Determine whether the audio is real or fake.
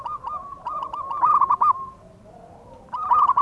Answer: real